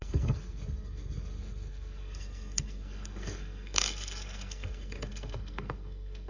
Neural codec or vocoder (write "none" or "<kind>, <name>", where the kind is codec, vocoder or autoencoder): codec, SNAC